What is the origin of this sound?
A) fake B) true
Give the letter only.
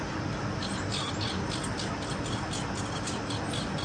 B